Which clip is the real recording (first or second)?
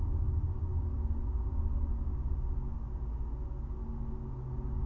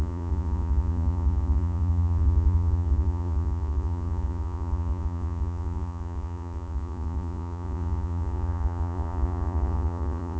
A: first